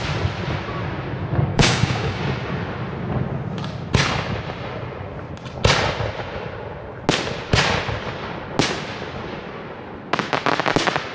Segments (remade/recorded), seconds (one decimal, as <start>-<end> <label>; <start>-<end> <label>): 0.0-1.5 recorded; 1.5-2.2 remade; 2.2-11.1 recorded

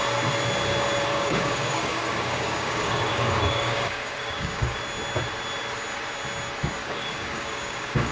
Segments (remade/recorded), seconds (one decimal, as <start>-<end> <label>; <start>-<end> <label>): 0.0-1.1 recorded; 1.1-4.8 remade; 4.8-6.8 recorded; 6.8-8.1 remade

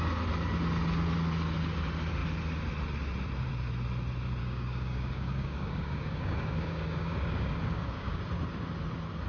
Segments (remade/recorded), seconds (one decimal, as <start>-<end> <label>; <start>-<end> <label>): 0.0-4.4 recorded; 4.4-8.2 remade; 8.2-9.3 recorded

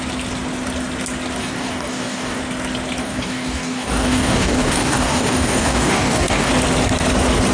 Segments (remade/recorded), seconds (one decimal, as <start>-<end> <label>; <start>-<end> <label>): 0.0-1.4 recorded; 1.4-2.4 remade; 2.4-3.0 recorded; 3.0-6.5 remade; 6.5-7.5 recorded

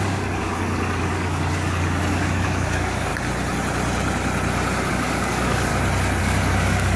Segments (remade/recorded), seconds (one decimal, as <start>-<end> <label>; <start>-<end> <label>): 0.0-3.1 remade; 3.1-4.9 recorded; 4.9-5.7 remade; 5.7-6.2 recorded; 6.2-7.0 remade

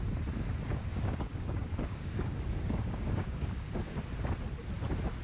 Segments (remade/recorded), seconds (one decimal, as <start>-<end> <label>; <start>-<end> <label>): 0.0-0.9 recorded; 0.9-4.0 remade; 4.0-5.2 recorded